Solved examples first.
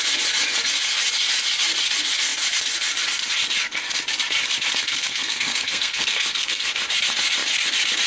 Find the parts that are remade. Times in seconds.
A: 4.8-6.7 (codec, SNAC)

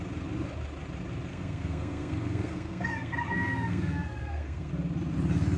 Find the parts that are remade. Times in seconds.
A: 1.3-4.7 (codec, SNAC)

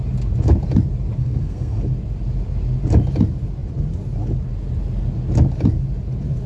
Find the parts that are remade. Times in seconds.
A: 1.2-1.8 (codec, SNAC)

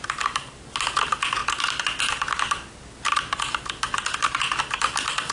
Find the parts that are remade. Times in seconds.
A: none

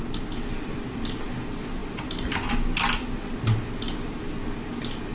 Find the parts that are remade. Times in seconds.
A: none

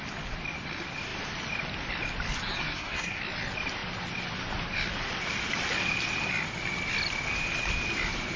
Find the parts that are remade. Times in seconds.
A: 2.6-3.2 (codec, SNAC)

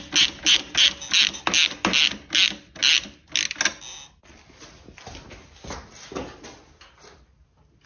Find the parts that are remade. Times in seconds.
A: none

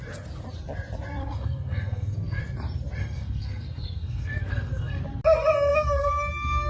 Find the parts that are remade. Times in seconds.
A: 1.2-2.4 (codec, SNAC); 3.0-5.0; 5.7-6.7